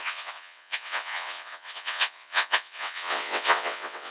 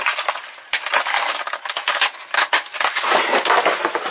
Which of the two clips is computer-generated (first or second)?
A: first